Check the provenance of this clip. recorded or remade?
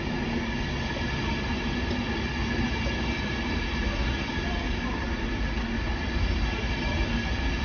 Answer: recorded